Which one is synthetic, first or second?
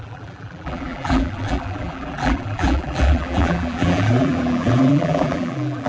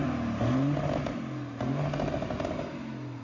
first